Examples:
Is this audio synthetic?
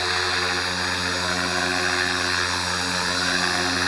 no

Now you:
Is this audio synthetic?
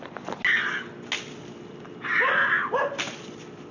no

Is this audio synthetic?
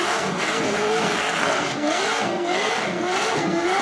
yes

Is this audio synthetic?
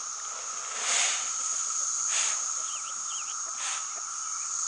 no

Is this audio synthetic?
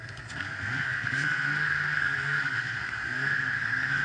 yes